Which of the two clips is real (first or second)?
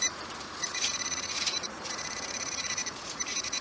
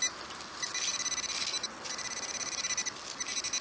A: second